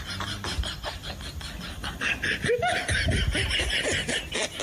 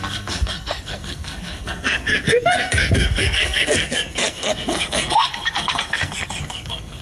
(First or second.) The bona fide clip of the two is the first